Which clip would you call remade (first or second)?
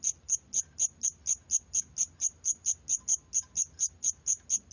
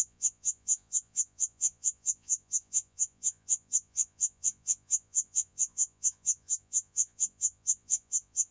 second